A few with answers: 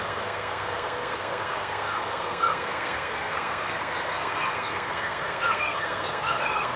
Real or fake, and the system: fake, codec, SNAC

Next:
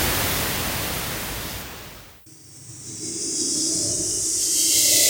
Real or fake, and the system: real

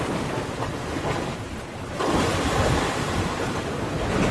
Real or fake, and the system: fake, vocoder, BigVGAN v2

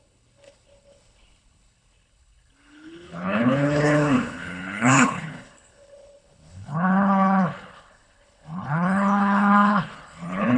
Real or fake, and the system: fake, codec, HILCodec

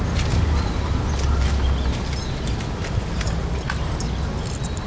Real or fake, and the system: real